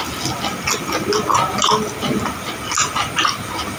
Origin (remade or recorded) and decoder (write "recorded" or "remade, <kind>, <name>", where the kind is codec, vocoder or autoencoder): recorded